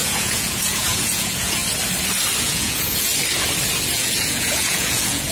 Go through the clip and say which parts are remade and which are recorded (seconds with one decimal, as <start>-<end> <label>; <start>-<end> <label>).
0.0-1.6 remade; 1.6-2.4 recorded; 2.4-3.1 remade; 3.1-3.9 recorded; 3.9-5.3 remade